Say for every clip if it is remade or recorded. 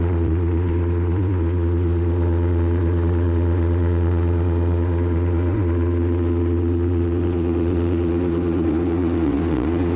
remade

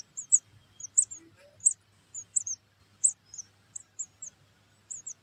recorded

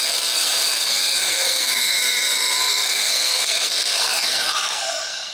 remade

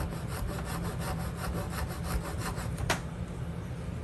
recorded